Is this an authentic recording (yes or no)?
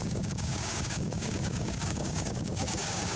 no